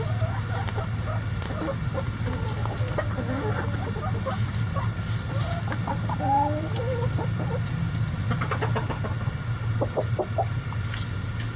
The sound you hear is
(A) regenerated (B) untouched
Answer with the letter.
B